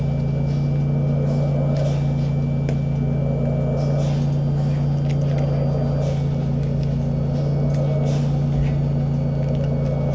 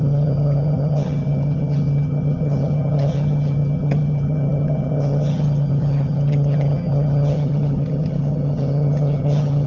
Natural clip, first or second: first